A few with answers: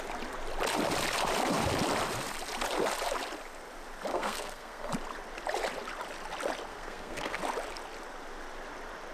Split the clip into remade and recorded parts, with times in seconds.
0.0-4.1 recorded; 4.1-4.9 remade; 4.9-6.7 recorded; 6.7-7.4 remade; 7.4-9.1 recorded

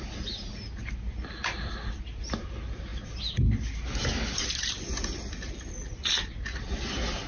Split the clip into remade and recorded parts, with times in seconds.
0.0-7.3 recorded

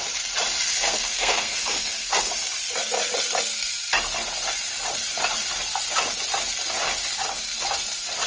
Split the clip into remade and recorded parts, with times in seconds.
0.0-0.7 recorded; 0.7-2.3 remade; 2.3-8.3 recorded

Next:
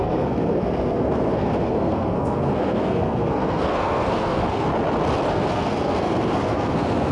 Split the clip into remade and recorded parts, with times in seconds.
0.0-4.7 remade; 4.7-5.3 recorded; 5.3-7.1 remade